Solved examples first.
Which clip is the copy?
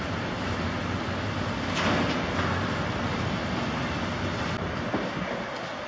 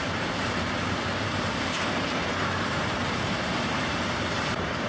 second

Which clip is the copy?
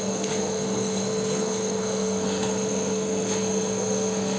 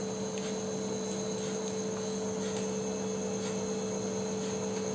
first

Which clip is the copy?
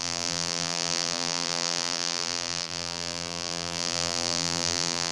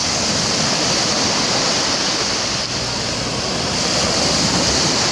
first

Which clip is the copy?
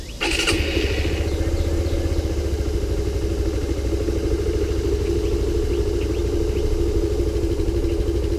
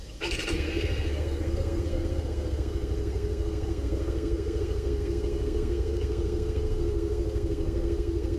second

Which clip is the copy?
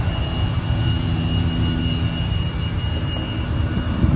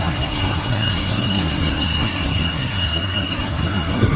second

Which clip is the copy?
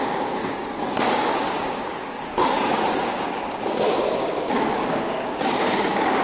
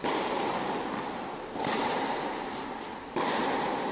first